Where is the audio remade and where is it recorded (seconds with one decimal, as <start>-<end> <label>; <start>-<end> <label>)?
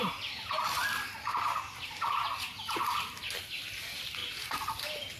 0.0-5.2 recorded